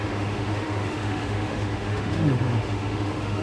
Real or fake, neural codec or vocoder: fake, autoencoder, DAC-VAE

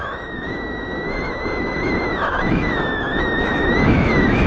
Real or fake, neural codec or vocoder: fake, autoencoder, DAC-VAE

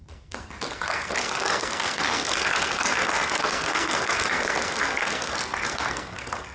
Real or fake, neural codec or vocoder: fake, codec, SNAC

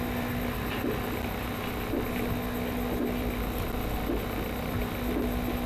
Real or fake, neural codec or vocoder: real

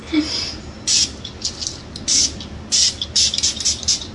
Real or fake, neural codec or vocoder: real